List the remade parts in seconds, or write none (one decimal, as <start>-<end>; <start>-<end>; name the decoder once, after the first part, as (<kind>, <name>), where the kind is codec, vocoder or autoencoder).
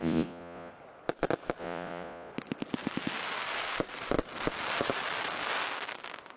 0.0-0.7 (vocoder, Vocos); 1.6-2.3